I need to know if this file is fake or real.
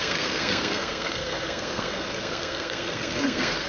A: fake